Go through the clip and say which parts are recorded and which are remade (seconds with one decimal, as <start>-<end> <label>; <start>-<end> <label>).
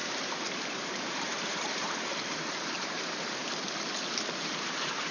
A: 0.0-3.4 remade; 3.4-4.3 recorded; 4.3-5.1 remade